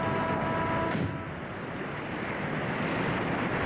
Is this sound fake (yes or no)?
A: no